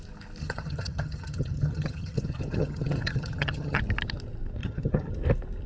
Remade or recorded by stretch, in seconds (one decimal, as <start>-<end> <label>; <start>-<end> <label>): 0.0-0.4 recorded; 0.4-3.8 remade; 3.8-4.6 recorded; 4.6-5.1 remade; 5.1-5.7 recorded